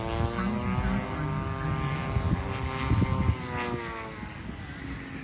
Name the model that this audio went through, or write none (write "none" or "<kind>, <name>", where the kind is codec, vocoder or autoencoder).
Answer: none